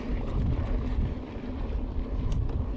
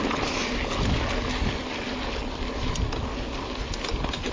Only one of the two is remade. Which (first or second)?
first